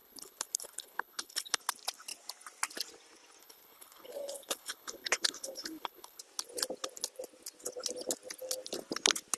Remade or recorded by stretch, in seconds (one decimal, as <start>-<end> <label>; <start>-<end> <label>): 0.0-1.6 remade; 1.6-3.4 recorded; 3.4-6.2 remade; 6.2-9.4 recorded

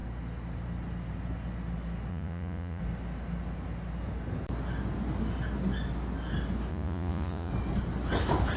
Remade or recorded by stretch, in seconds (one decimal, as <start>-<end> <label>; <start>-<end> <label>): 0.0-2.1 recorded; 2.1-2.8 remade; 2.8-6.7 recorded; 6.7-7.5 remade; 7.5-8.6 recorded

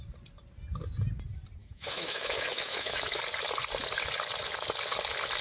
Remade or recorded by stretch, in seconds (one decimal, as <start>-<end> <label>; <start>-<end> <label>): 0.0-1.6 recorded; 1.6-3.2 remade; 3.2-5.4 recorded